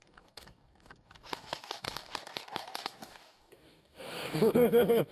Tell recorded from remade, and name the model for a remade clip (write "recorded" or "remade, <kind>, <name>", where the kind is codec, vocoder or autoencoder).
remade, codec, DAC